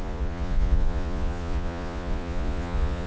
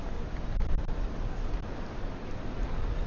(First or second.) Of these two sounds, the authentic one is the second